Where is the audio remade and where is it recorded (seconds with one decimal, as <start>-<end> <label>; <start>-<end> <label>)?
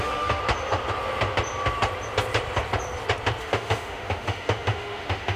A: 0.0-0.4 remade; 0.4-3.4 recorded; 3.4-5.4 remade